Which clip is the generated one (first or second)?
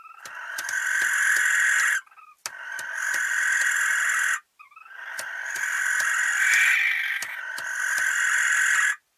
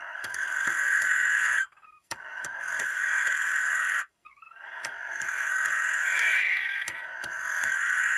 second